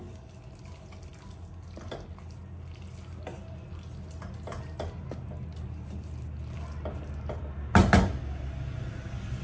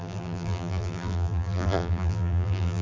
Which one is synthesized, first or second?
second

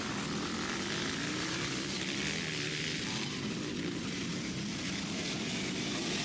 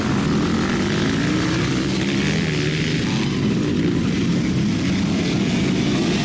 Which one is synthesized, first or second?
first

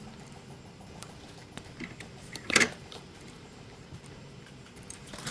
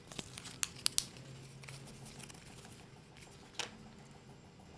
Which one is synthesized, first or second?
first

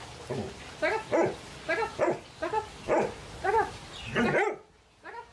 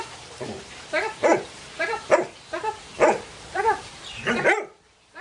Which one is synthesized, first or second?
second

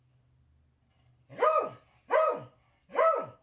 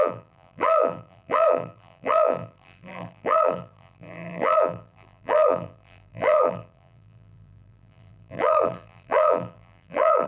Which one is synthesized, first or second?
second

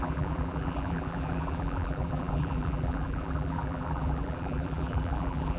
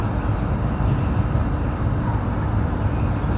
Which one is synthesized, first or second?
first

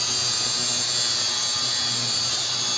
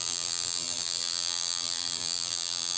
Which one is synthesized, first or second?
second